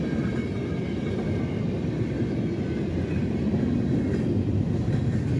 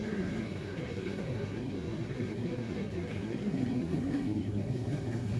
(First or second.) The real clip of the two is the first